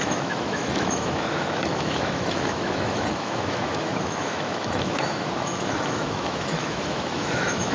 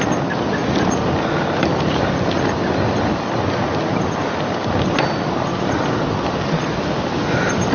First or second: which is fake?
first